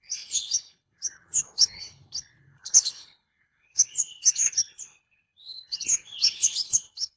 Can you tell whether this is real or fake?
fake